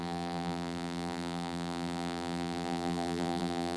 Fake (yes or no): yes